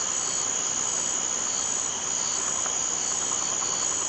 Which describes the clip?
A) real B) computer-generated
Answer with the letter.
A